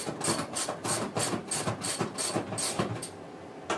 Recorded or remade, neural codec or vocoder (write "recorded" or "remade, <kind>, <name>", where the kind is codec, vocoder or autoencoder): recorded